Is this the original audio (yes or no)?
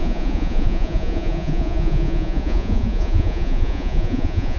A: no